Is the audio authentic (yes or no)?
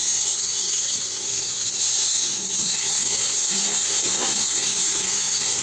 no